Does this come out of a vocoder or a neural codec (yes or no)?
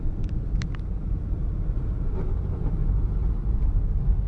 no